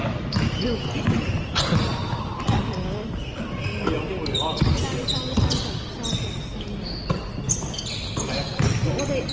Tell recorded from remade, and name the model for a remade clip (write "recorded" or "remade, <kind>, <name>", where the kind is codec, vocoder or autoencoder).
recorded